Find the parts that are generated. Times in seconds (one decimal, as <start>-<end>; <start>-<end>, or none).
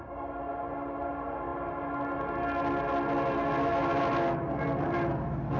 none